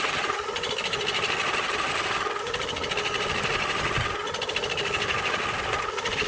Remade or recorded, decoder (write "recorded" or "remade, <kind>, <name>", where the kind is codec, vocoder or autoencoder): recorded